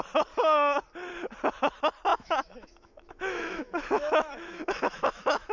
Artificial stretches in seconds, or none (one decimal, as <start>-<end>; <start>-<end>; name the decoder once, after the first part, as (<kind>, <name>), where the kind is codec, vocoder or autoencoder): 2.1-5.5 (autoencoder, DAC-VAE)

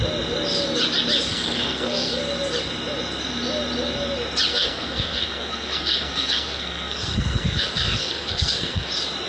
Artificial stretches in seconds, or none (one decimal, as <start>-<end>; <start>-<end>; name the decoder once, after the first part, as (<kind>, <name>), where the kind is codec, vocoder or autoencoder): 1.3-2.2 (codec, SNAC); 4.5-8.9

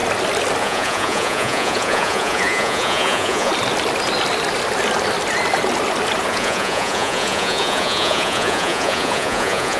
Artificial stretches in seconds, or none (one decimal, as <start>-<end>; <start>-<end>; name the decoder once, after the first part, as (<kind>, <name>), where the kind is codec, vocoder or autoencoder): 0.6-3.5 (vocoder, Vocos); 6.3-9.8

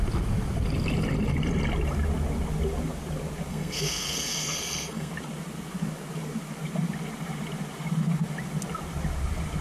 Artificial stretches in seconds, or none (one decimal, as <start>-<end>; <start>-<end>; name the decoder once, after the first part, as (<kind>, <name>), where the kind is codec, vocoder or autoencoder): 3.5-5.1 (codec, SNAC)